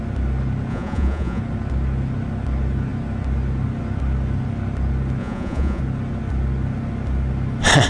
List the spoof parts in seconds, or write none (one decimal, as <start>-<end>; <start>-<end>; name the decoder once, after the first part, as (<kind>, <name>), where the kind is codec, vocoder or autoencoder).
0.7-1.4 (vocoder, Vocos); 5.2-5.8